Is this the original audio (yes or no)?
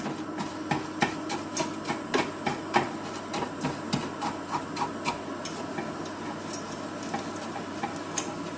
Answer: yes